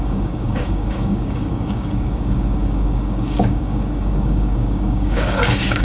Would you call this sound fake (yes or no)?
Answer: yes